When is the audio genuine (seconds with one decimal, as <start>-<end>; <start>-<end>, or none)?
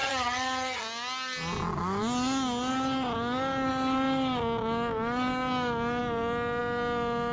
0.8-7.3